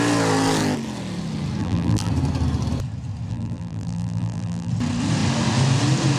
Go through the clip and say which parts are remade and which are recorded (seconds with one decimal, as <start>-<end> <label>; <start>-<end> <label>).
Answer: 0.0-1.6 recorded; 1.6-2.1 remade; 2.1-3.3 recorded; 3.3-4.7 remade; 4.7-6.2 recorded